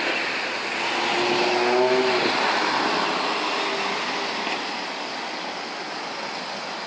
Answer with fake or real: real